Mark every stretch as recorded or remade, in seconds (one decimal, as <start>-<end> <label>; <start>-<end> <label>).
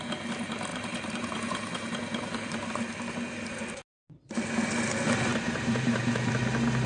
0.0-0.7 recorded; 0.7-2.7 remade; 2.7-5.3 recorded; 5.3-6.3 remade; 6.3-6.9 recorded